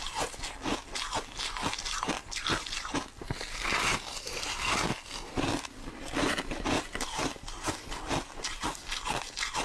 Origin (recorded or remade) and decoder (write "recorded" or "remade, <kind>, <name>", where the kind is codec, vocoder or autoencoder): recorded